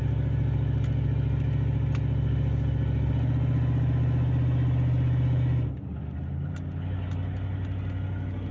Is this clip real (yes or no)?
yes